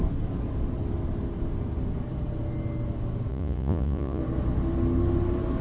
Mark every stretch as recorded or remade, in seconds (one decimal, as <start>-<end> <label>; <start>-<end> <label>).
0.0-3.3 recorded; 3.3-4.2 remade; 4.2-5.6 recorded